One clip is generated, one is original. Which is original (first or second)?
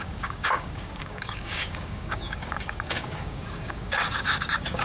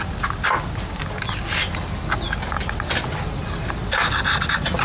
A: second